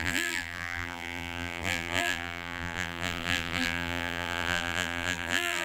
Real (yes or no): no